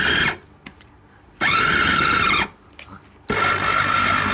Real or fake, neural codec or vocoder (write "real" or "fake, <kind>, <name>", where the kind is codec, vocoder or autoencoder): real